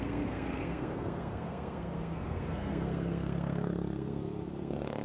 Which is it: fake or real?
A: fake